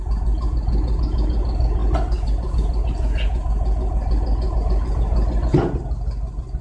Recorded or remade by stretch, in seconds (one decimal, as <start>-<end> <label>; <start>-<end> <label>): 0.0-6.6 recorded

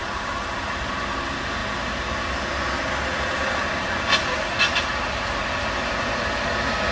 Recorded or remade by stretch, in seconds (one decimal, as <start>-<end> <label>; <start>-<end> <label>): 0.0-6.9 recorded

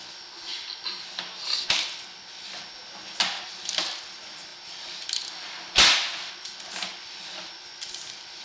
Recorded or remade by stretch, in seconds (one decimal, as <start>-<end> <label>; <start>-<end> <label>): 0.0-8.4 recorded

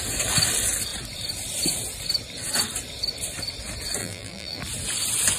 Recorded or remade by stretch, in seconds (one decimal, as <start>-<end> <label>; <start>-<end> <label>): 0.0-4.0 recorded; 4.0-4.6 remade; 4.6-5.4 recorded

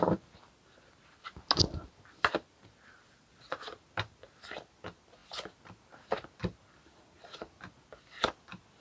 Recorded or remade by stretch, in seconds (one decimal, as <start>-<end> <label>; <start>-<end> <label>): 0.0-8.8 recorded

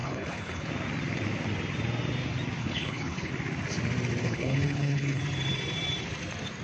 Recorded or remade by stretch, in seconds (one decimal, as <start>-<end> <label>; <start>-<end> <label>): 0.0-0.7 remade; 0.7-2.6 recorded; 2.6-3.3 remade; 3.3-4.2 recorded; 4.2-5.2 remade; 5.2-6.6 recorded

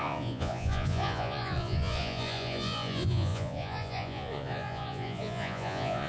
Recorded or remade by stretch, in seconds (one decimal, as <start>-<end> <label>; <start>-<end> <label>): 0.0-6.1 remade

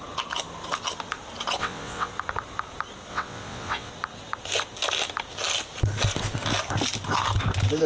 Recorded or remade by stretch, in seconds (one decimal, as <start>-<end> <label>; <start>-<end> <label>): 0.0-1.6 recorded; 1.6-2.1 remade; 2.1-3.1 recorded; 3.1-3.9 remade; 3.9-7.9 recorded